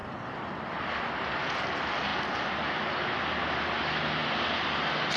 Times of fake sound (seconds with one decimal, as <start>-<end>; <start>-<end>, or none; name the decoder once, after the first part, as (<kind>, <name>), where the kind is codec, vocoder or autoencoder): none